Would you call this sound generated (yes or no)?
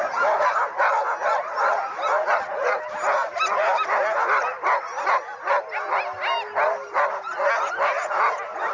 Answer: no